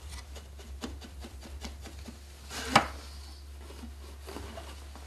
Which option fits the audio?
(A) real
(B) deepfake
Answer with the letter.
A